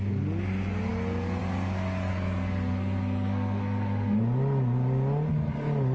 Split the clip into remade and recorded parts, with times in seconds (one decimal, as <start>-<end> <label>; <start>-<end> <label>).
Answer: 0.0-2.1 recorded; 2.1-4.2 remade; 4.2-5.9 recorded

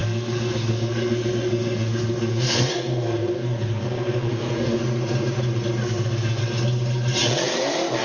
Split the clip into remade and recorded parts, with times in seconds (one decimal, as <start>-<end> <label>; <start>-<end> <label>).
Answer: 0.0-4.8 remade; 4.8-5.8 recorded; 5.8-6.4 remade; 6.4-8.0 recorded

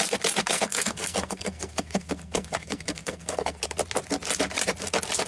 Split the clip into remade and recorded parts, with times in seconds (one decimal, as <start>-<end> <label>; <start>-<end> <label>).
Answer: 0.0-0.4 recorded; 0.4-3.6 remade; 3.6-5.3 recorded

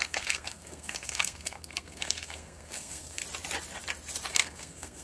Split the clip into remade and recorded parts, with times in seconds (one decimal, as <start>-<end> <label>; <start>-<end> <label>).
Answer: 0.0-3.2 remade; 3.2-4.3 recorded; 4.3-5.0 remade

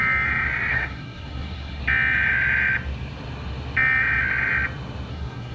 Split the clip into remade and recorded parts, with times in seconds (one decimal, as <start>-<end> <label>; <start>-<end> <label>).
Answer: 0.0-0.7 recorded; 0.7-1.8 remade; 1.8-5.1 recorded; 5.1-5.5 remade

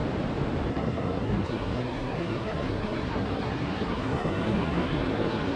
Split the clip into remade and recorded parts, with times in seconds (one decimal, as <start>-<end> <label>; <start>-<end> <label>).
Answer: 0.0-0.7 recorded; 0.7-5.6 remade

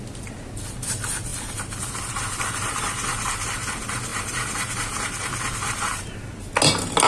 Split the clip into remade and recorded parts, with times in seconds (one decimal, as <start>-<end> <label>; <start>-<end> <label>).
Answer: 0.0-7.1 recorded

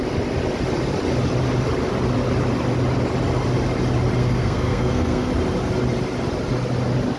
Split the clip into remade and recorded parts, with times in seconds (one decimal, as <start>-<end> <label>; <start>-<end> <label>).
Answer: 0.0-4.2 recorded; 4.2-5.3 remade; 5.3-7.2 recorded